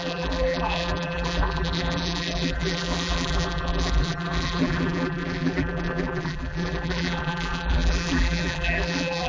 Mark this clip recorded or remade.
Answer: remade